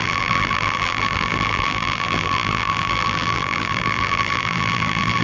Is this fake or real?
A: fake